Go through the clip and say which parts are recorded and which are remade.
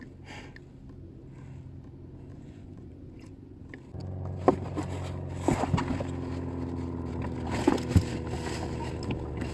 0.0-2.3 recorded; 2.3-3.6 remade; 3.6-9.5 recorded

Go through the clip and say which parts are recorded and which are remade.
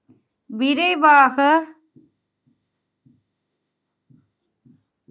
0.0-1.3 recorded; 1.3-4.4 remade; 4.4-5.1 recorded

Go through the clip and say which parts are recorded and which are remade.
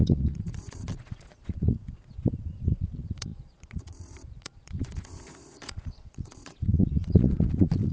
0.0-7.9 remade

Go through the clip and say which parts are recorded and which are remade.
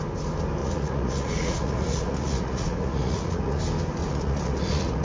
0.0-0.6 recorded; 0.6-3.6 remade; 3.6-4.0 recorded; 4.0-5.0 remade